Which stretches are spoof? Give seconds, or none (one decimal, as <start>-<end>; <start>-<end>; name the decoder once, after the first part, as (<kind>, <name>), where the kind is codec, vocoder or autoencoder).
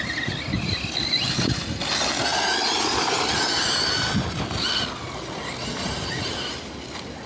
none